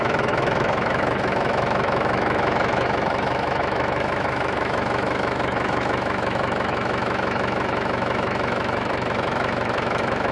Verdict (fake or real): fake